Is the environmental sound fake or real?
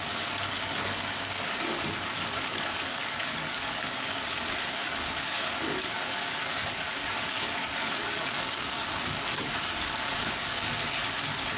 fake